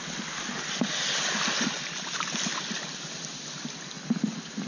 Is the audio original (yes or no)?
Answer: yes